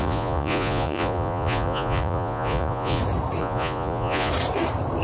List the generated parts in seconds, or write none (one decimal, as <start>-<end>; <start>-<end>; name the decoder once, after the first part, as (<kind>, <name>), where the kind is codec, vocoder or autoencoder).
0.0-3.0 (vocoder, Vocos); 3.4-4.3